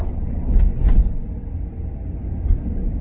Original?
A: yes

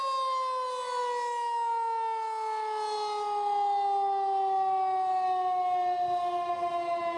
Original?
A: yes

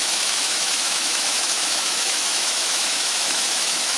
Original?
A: no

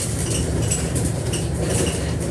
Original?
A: yes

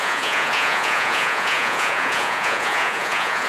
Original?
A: no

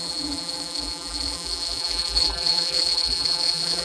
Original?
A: no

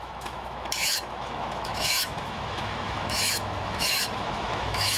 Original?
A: no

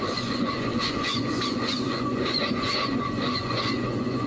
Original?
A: no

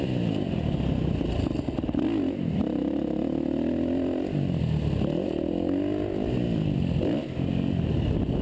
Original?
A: yes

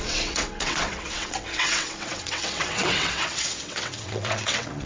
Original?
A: no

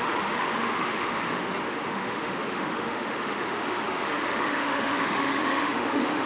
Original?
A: no